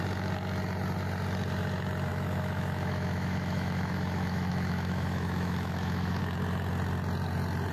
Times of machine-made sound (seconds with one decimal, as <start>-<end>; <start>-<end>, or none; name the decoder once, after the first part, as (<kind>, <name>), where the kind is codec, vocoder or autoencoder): 2.1-6.2 (autoencoder, DAC-VAE)